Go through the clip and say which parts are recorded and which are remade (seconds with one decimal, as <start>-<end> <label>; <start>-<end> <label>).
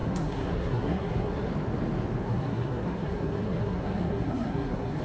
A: 0.0-1.5 remade; 1.5-2.2 recorded; 2.2-5.0 remade